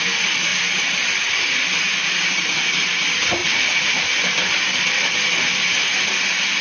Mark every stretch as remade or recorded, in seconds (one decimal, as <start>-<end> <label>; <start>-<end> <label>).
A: 0.0-0.5 recorded; 0.5-2.6 remade; 2.6-3.4 recorded; 3.4-4.5 remade; 4.5-6.6 recorded